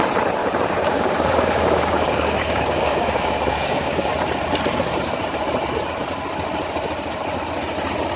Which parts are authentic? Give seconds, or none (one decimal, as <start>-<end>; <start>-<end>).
0.0-0.4; 4.1-8.2